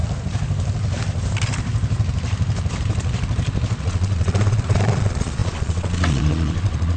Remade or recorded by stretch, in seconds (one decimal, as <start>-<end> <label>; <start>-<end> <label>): 0.0-3.8 recorded; 3.8-7.0 remade